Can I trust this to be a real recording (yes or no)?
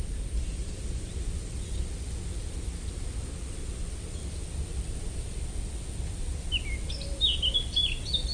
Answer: yes